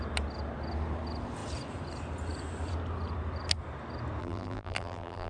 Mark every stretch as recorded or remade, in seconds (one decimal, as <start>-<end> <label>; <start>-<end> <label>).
0.0-4.2 recorded; 4.2-5.3 remade